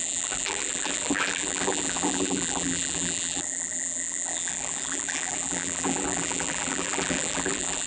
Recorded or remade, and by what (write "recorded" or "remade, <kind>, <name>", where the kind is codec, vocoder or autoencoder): remade, vocoder, BigVGAN v2